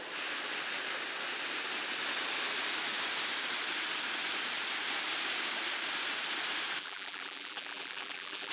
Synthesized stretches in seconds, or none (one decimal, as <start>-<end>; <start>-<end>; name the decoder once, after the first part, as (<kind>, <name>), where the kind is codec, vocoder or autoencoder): 6.8-8.5 (vocoder, BigVGAN v2)